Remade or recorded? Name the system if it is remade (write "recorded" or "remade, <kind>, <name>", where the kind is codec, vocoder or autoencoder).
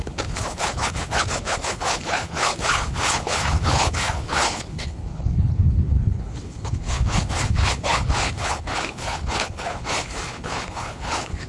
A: remade, codec, HILCodec